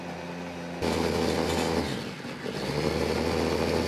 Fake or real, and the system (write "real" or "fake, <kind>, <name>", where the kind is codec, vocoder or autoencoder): real